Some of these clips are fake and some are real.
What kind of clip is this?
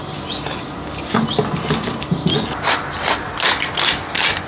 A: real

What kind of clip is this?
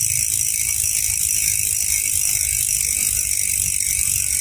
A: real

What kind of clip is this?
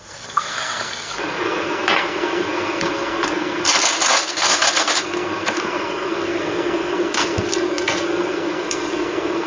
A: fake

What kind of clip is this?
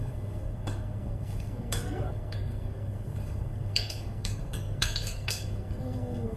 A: fake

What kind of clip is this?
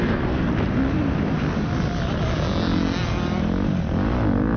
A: real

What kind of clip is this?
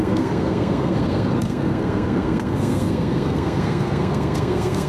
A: fake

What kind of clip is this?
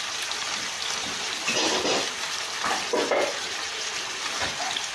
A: real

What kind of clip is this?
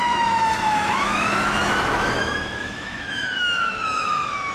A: fake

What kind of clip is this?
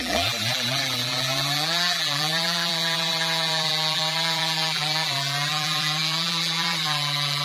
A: fake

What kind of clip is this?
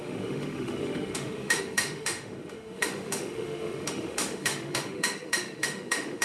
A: fake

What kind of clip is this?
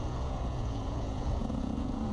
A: fake